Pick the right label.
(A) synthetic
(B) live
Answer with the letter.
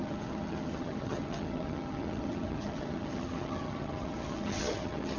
A